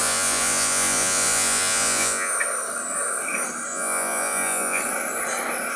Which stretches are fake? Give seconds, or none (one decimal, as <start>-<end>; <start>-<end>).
0.0-2.3; 3.7-4.8